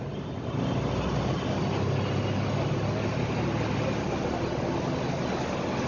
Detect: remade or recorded recorded